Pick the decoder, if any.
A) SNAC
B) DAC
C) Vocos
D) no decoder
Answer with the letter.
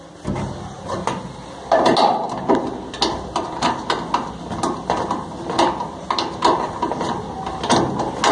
D